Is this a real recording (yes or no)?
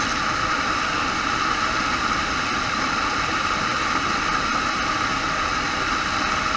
yes